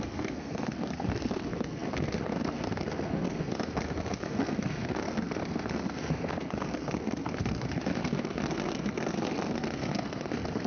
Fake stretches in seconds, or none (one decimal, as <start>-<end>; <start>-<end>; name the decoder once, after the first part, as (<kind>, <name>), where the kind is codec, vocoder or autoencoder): 0.0-10.7 (codec, SNAC)